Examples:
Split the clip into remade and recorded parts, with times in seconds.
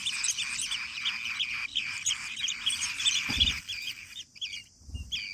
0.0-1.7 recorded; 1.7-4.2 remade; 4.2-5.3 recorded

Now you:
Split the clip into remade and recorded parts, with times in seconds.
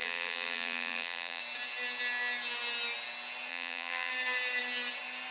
0.0-1.4 remade; 1.4-3.5 recorded; 3.5-4.1 remade; 4.1-5.3 recorded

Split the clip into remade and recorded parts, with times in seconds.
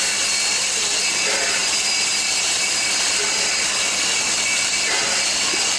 0.0-5.8 remade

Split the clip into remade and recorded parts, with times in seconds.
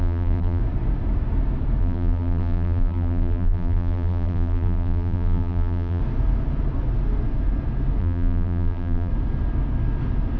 0.0-0.6 remade; 0.6-1.8 recorded; 1.8-6.0 remade; 6.0-8.0 recorded; 8.0-9.1 remade; 9.1-10.4 recorded